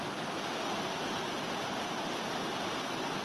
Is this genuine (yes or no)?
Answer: yes